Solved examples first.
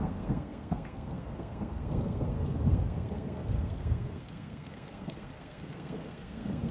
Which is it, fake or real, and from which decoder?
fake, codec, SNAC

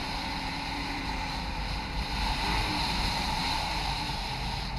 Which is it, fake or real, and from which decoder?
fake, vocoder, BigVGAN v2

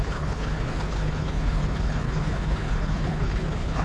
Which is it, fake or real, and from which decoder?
fake, codec, HILCodec